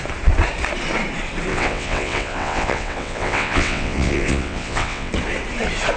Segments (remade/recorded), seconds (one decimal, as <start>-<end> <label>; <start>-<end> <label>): 0.0-1.5 recorded; 1.5-5.1 remade; 5.1-6.0 recorded